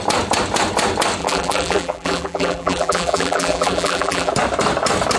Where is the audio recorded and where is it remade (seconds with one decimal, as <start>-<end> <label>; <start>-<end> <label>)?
0.0-1.2 recorded; 1.2-4.3 remade; 4.3-5.2 recorded